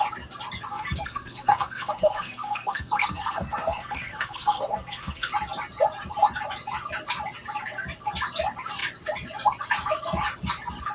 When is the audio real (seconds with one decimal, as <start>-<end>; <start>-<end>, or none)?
0.0-0.7; 5.3-10.9